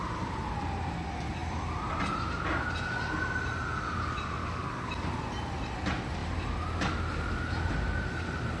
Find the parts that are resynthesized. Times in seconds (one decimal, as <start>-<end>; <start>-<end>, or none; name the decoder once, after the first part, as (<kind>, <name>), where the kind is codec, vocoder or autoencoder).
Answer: 4.4-4.9 (codec, DAC)

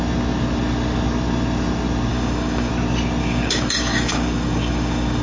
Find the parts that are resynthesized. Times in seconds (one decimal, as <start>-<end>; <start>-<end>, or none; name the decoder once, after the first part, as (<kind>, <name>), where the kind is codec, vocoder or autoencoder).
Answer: 2.1-2.7 (codec, DAC); 3.2-5.2

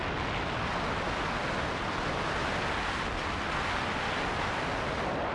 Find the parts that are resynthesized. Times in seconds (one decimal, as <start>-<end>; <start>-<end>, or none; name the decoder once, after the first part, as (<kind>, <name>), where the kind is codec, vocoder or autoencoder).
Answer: none

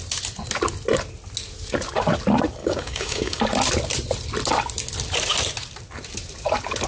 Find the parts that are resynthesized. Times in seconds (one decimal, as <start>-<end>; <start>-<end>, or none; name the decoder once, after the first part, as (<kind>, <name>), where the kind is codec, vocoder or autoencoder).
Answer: 2.6-3.4 (codec, DAC)

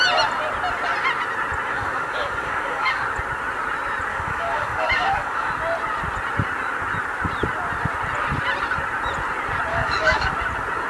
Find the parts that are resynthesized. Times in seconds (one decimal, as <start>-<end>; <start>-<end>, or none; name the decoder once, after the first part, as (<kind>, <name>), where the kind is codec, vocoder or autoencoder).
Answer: 1.7-3.0 (codec, DAC); 4.1-5.5; 9.7-10.3